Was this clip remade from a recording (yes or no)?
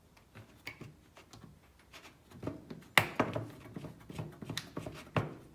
no